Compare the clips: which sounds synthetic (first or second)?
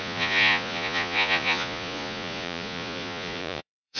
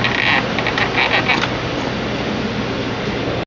first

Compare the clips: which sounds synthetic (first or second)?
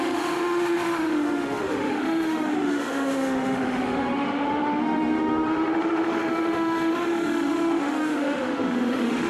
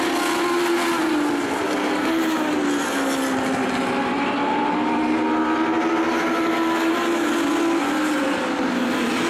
first